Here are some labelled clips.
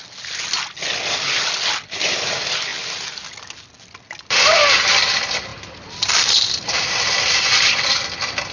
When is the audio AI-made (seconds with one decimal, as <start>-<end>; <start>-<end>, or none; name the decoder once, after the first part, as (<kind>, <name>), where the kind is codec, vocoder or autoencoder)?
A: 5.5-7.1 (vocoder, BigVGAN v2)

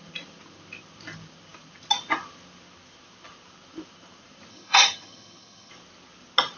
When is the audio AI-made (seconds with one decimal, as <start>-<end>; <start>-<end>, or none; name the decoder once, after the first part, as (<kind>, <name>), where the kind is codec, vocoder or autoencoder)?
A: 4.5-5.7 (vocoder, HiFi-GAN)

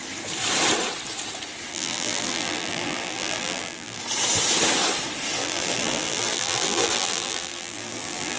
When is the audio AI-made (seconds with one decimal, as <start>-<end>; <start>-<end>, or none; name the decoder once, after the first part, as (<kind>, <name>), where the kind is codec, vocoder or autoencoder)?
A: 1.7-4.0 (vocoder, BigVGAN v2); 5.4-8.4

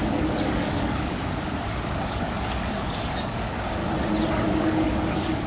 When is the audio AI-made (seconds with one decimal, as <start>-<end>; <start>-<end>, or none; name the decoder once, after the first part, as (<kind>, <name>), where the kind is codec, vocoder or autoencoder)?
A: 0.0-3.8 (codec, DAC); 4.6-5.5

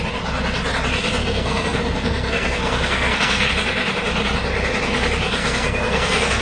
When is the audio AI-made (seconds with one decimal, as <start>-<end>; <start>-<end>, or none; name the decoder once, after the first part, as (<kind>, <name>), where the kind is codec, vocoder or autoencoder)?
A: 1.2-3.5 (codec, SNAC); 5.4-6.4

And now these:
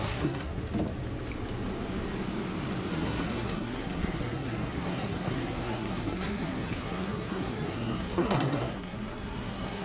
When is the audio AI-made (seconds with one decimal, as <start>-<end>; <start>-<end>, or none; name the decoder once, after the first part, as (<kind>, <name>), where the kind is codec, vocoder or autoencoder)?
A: 0.0-0.6 (codec, SNAC); 2.9-9.8